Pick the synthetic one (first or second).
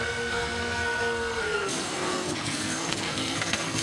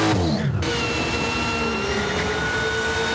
first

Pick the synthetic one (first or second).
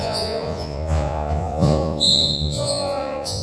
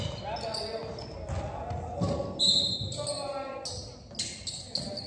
first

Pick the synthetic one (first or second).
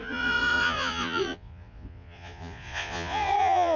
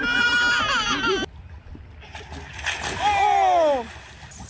first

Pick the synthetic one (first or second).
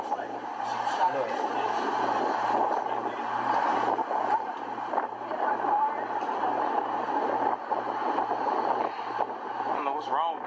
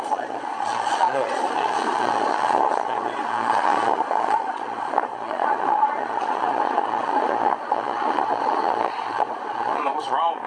second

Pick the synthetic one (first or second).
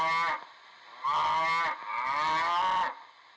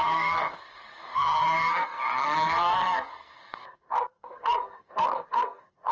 second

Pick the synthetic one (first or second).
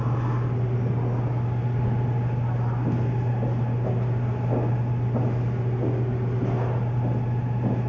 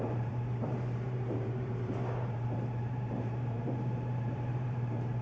second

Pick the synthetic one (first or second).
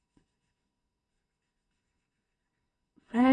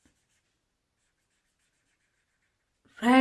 first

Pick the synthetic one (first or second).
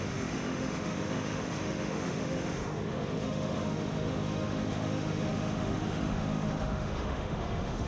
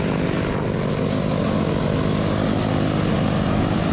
first